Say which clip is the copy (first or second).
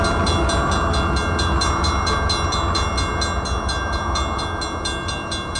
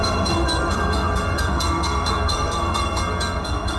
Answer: second